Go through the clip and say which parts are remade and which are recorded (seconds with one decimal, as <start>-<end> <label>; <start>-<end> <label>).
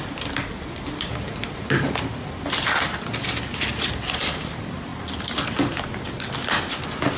0.0-7.2 recorded